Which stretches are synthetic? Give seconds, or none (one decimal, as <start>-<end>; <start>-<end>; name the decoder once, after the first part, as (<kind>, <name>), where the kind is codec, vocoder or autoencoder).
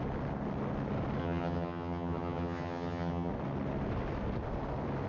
1.2-3.3 (vocoder, HiFi-GAN)